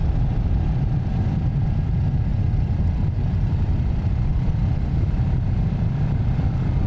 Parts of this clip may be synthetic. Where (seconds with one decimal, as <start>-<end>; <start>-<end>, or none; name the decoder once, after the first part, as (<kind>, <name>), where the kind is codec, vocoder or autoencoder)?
2.3-3.5 (vocoder, BigVGAN v2); 4.3-5.0